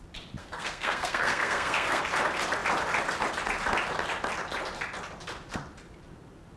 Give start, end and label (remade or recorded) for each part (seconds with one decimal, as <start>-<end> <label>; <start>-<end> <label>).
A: 0.0-0.4 recorded; 0.4-2.0 remade; 2.0-6.6 recorded